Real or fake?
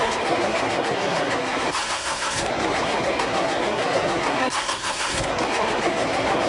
fake